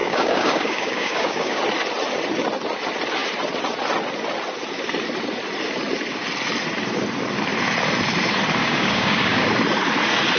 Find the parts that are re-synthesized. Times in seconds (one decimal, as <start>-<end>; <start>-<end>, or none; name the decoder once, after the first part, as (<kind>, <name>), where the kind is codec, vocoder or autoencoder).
0.0-1.6 (codec, DAC); 8.6-9.5